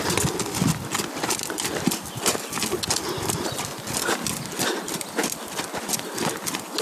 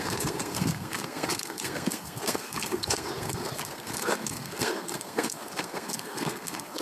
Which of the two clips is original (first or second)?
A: first